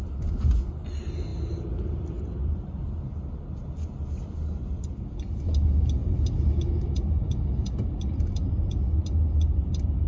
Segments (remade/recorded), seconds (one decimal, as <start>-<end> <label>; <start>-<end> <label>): 0.0-10.1 recorded